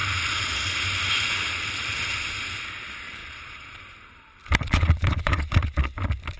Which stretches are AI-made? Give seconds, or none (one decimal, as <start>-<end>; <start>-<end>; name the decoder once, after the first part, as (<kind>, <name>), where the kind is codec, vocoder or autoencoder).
3.2-3.8 (vocoder, Vocos); 4.6-5.9